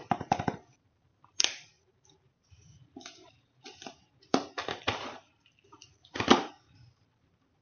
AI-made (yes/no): yes